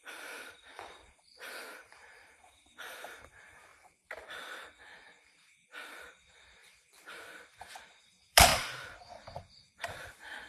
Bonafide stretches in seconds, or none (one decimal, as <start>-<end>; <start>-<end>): 3.7-6.0; 8.5-10.0

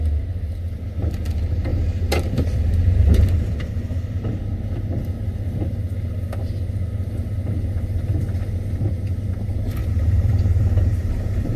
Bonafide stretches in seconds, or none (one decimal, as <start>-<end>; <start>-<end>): 0.0-1.7; 2.6-9.8

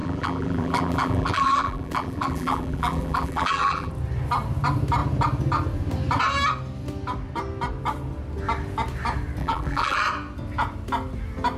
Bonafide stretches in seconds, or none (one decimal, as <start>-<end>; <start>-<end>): 3.9-9.4; 10.0-11.6

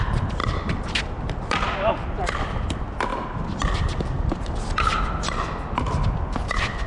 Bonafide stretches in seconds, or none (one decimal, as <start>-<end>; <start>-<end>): 0.0-0.4; 1.9-3.1; 5.1-6.9

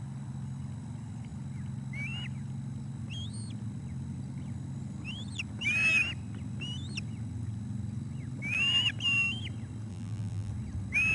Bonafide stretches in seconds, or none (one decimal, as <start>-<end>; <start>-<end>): 0.0-9.9; 10.5-11.1